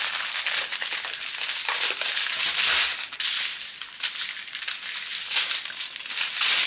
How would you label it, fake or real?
real